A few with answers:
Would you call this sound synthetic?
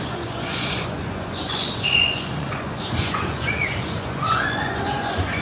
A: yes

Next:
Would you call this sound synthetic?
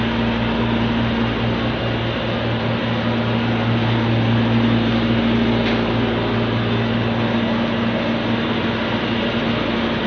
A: no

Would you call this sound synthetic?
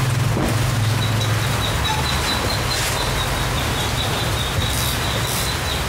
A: no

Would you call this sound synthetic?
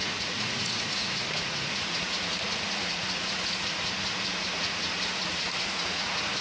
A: yes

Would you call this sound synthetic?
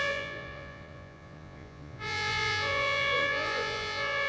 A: yes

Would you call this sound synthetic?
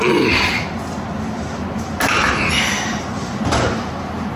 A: no